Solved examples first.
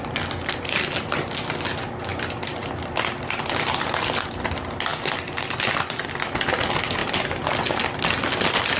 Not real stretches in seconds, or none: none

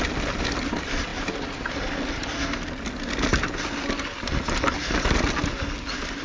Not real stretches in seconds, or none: none

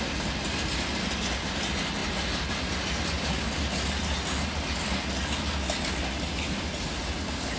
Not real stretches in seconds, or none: none

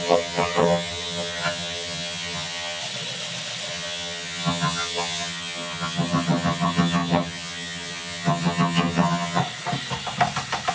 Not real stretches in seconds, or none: 0.0-2.8 (vocoder, HiFi-GAN); 3.7-9.4

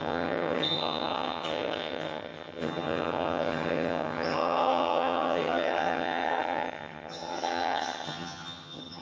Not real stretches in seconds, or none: 0.0-9.0 (vocoder, HiFi-GAN)